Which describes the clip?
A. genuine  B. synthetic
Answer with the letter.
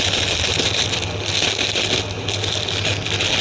A